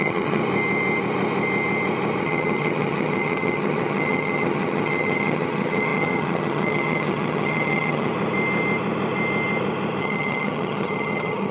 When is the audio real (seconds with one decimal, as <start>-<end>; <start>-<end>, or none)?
0.4-2.2; 8.1-10.0